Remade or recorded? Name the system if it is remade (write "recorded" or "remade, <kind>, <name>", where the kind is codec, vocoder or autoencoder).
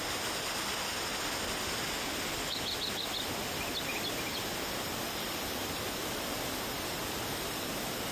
recorded